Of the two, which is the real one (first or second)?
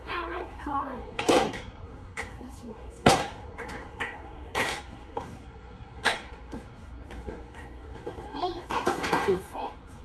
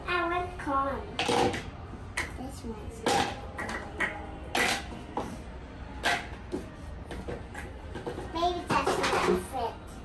second